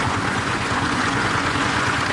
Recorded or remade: remade